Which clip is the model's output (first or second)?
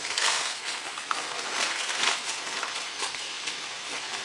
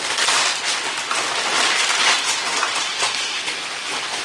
first